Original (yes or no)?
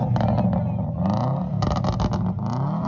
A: yes